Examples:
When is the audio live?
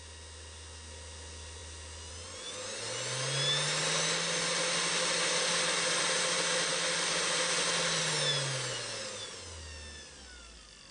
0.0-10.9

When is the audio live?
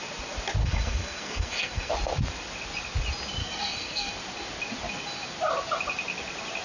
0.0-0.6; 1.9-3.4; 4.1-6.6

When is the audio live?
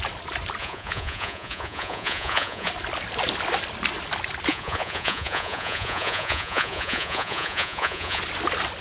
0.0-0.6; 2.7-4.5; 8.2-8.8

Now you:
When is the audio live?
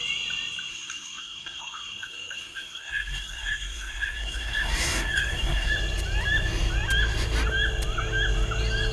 0.0-0.7; 5.7-8.9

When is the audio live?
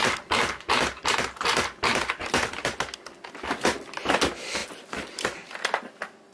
0.0-6.3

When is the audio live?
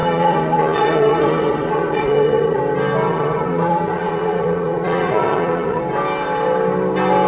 2.6-3.1; 5.8-7.3